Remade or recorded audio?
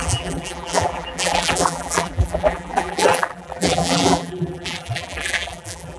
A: remade